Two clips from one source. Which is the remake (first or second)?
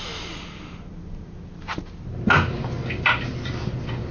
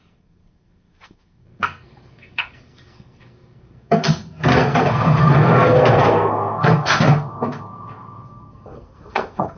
second